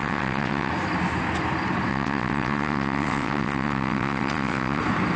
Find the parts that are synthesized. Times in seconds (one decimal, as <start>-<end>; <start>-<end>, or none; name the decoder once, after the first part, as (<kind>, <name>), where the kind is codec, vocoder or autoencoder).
0.0-0.7 (vocoder, WaveNeXt); 1.9-4.8